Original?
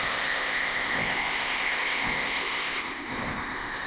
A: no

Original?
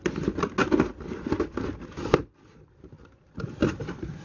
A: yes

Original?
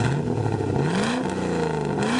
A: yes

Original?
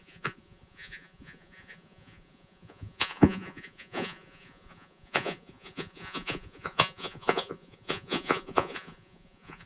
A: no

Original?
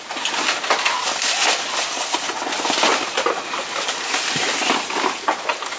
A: yes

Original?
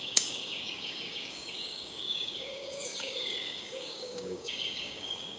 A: no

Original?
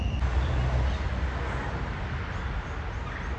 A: yes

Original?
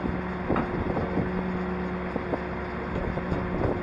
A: yes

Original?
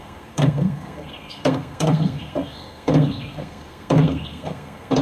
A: no